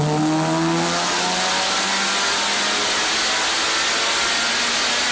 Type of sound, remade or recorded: recorded